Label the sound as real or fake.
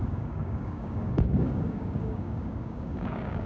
fake